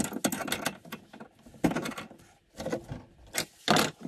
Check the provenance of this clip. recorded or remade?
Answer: recorded